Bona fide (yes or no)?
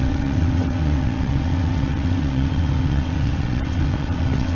no